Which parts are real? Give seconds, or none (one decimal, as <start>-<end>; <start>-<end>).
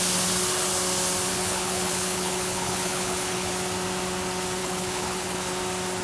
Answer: 0.0-1.3; 3.5-4.6; 5.5-6.0